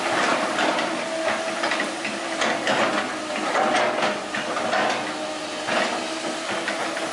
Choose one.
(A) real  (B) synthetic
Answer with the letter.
A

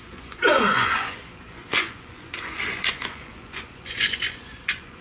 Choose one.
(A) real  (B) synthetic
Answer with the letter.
B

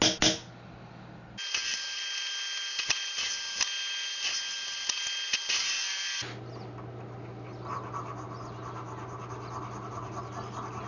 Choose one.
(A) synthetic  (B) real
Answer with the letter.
B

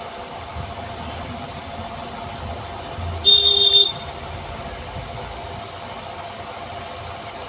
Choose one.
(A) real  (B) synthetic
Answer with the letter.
A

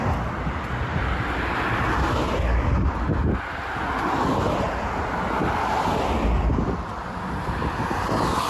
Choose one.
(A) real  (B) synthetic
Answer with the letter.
A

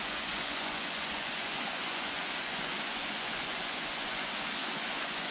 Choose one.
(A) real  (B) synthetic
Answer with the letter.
B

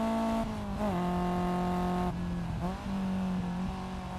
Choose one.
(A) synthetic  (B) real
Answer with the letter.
B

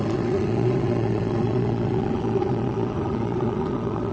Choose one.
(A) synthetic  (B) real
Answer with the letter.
A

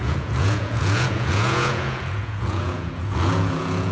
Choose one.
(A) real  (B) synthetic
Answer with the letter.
B